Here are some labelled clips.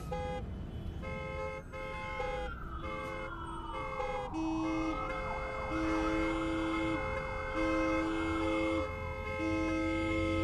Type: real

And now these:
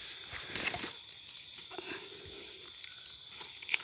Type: real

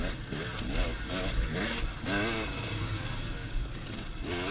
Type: real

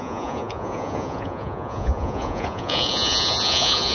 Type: fake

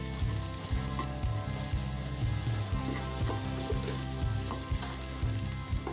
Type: real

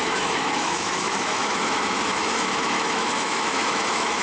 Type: fake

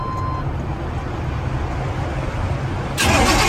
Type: real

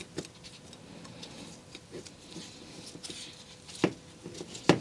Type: real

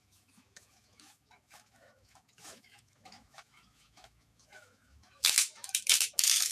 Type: fake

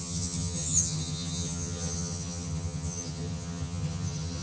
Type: fake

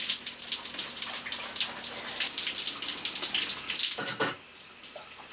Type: real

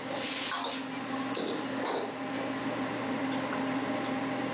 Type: real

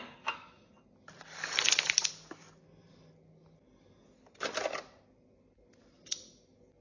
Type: real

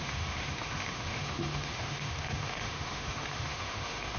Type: fake